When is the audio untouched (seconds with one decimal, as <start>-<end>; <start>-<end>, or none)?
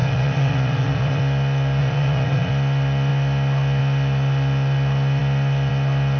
1.2-1.8; 2.5-6.2